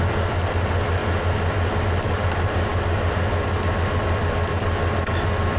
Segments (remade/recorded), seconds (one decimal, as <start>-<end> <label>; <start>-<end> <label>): 0.0-5.6 recorded